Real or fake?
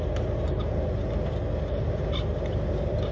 real